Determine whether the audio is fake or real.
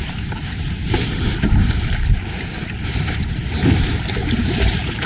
fake